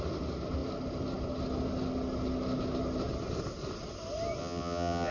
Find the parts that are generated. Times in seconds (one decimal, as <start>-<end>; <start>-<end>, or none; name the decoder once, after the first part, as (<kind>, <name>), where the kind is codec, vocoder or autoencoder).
4.4-5.1 (vocoder, WaveNeXt)